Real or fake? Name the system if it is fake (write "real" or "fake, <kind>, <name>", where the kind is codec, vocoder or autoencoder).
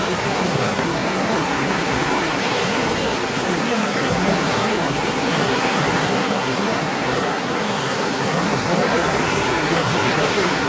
fake, codec, SNAC